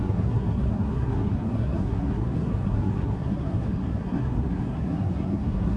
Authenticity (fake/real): fake